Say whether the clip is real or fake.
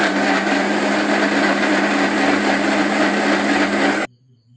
real